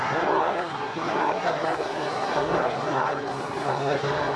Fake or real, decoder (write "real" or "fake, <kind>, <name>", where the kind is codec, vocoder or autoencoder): fake, codec, SNAC